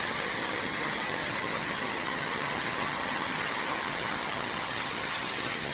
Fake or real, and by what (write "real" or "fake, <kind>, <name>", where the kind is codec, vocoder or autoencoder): fake, vocoder, HiFi-GAN